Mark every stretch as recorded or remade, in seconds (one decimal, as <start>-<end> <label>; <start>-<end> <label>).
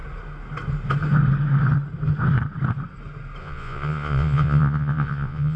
0.0-3.4 recorded; 3.4-5.6 remade